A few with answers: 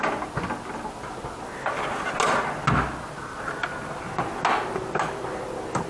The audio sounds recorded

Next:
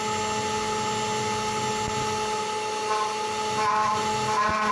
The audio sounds recorded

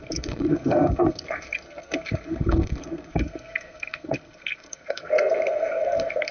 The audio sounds remade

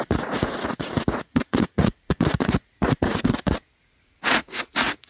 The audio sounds remade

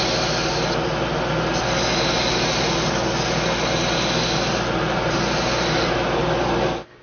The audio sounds recorded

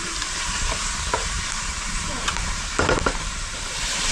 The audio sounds remade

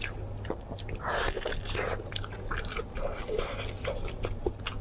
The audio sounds recorded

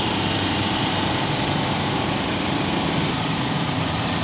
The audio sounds remade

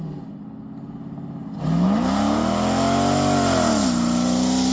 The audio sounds recorded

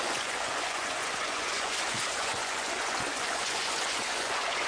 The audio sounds remade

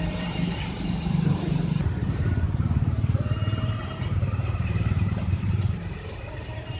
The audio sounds remade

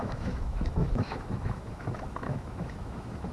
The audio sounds remade